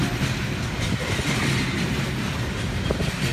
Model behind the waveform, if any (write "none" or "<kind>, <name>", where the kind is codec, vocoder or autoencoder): none